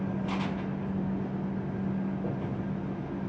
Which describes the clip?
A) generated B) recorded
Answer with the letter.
B